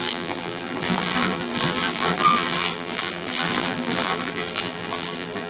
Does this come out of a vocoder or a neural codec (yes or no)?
yes